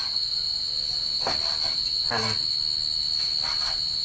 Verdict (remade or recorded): recorded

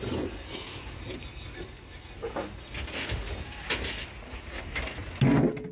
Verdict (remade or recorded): recorded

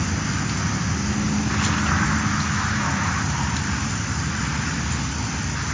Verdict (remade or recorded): recorded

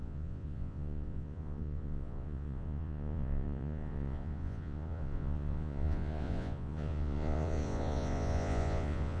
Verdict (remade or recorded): remade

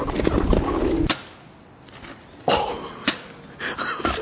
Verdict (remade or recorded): recorded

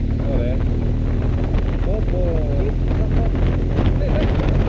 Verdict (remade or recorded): recorded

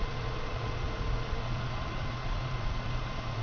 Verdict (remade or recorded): remade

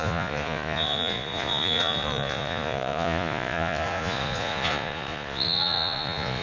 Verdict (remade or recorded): remade